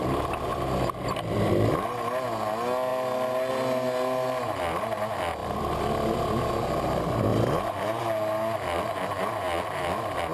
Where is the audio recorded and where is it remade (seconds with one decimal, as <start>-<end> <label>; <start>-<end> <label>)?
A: 0.0-0.5 recorded; 0.5-1.7 remade; 1.7-5.4 recorded; 5.4-6.4 remade; 6.4-10.3 recorded